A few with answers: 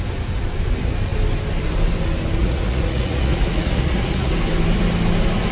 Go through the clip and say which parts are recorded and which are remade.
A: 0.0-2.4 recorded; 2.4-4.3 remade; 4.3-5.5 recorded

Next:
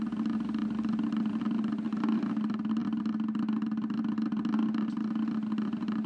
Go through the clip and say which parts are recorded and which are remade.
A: 0.0-6.1 recorded

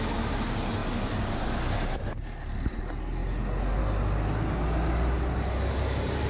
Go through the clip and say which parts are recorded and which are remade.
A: 0.0-6.3 recorded

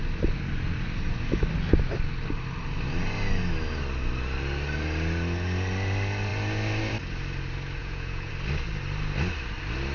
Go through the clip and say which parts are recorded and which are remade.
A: 0.0-7.8 recorded; 7.8-8.3 remade; 8.3-9.9 recorded

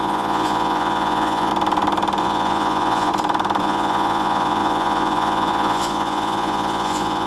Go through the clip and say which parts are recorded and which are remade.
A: 0.0-1.5 remade; 1.5-2.2 recorded; 2.2-3.1 remade; 3.1-3.6 recorded; 3.6-7.3 remade